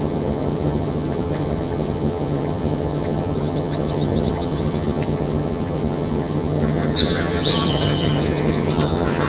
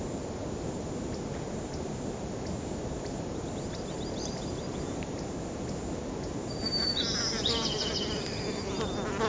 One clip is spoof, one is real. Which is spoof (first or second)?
first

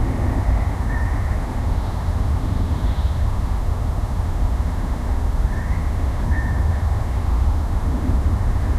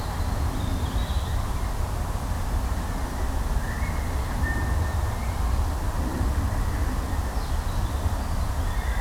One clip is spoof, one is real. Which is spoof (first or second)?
first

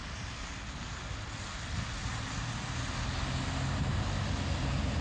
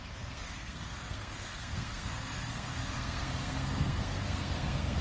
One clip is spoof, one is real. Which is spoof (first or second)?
second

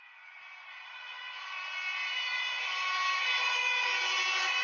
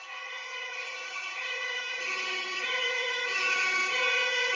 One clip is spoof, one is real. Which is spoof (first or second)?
second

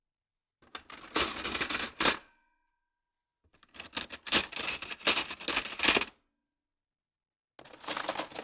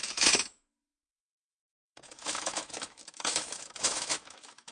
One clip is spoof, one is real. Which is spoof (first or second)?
second